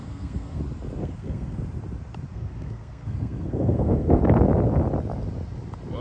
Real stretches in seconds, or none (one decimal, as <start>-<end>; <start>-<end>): 0.6-1.0; 1.6-2.3; 4.2-6.0